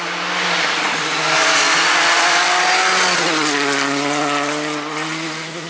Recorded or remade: recorded